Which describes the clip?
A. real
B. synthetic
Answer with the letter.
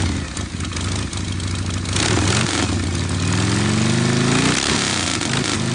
A